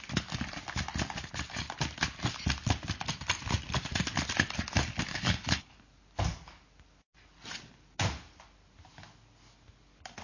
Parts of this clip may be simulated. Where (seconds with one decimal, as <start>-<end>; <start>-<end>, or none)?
5.1-5.7